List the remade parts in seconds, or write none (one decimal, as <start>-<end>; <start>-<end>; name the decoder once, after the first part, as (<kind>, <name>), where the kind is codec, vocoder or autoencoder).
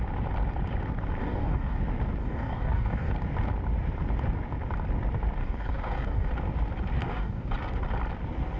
1.2-1.8 (codec, DAC); 2.2-3.1; 5.4-6.3; 7.0-7.5